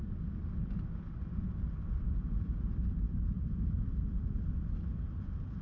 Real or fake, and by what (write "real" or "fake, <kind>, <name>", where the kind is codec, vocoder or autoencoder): real